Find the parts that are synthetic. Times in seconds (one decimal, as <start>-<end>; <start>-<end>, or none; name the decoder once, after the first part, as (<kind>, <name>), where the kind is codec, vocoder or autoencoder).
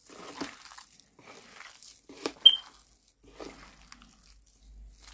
none